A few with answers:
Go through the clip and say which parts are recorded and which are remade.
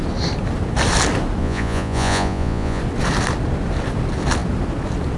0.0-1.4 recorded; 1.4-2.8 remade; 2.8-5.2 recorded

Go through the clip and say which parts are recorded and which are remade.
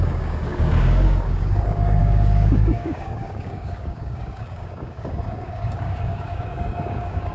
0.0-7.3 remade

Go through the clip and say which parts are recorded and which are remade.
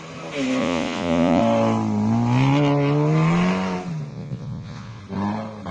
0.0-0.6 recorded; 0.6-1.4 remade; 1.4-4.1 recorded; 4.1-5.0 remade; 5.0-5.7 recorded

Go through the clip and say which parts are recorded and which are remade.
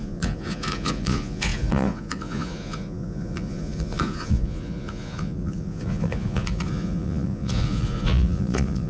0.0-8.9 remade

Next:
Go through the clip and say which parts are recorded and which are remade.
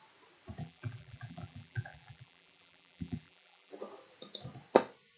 0.0-0.6 recorded; 0.6-3.7 remade; 3.7-5.2 recorded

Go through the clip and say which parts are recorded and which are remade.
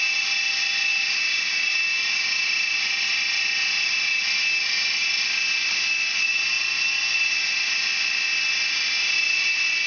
0.0-9.9 recorded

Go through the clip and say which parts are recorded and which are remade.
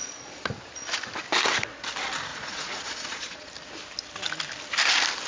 0.0-0.5 remade; 0.5-2.3 recorded; 2.3-3.5 remade; 3.5-5.3 recorded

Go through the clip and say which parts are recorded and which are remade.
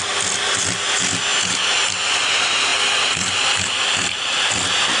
0.0-1.3 remade; 1.3-2.3 recorded; 2.3-5.0 remade